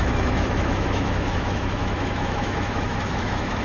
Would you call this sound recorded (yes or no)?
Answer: no